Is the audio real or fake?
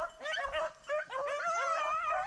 real